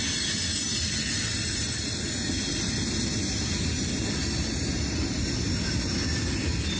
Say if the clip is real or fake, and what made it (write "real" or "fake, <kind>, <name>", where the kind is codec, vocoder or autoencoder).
real